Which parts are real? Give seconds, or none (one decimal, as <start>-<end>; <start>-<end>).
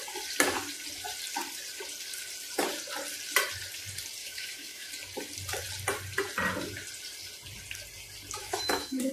0.0-4.2; 4.9-8.4